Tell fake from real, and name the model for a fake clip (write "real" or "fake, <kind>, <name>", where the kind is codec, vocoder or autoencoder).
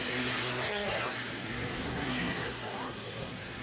fake, codec, SNAC